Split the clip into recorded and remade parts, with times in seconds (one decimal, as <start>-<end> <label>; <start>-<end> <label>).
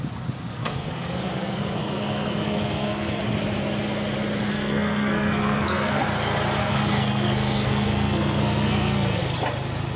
0.0-0.5 recorded; 0.5-3.2 remade; 3.2-4.5 recorded; 4.5-6.0 remade; 6.0-6.6 recorded; 6.6-9.2 remade; 9.2-10.0 recorded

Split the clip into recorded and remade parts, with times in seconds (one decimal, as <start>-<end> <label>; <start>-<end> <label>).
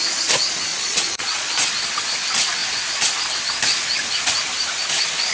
0.0-0.7 recorded; 0.7-1.7 remade; 1.7-5.3 recorded